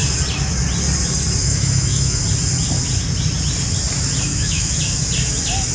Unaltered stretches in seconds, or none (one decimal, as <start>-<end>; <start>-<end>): 0.0-1.4; 2.2-4.3; 4.8-5.7